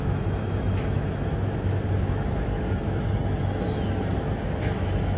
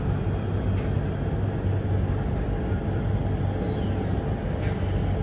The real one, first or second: second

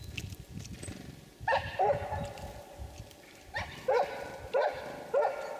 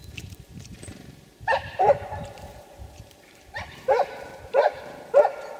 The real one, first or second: first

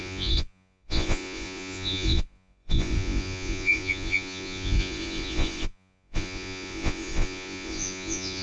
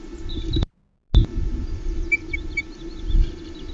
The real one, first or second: second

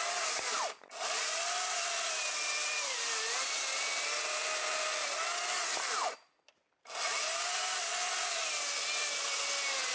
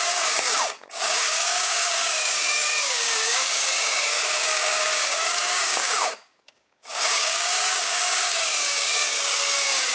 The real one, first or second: first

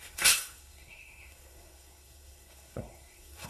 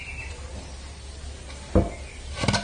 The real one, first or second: second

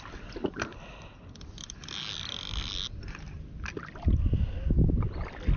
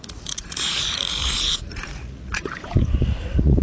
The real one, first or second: first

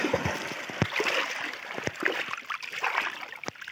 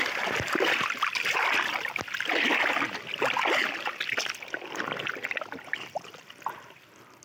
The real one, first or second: second